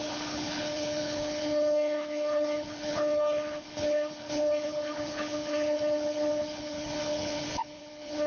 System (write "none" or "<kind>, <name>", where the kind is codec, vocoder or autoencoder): codec, HILCodec